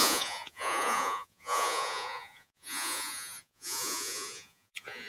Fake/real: fake